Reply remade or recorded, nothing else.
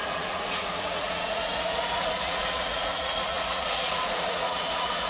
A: remade